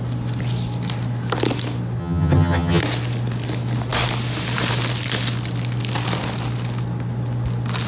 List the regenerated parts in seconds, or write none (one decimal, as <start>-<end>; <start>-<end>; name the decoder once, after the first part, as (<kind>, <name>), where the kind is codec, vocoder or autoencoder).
2.0-2.8 (vocoder, HiFi-GAN)